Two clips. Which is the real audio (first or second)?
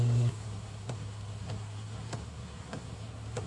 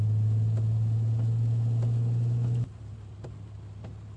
second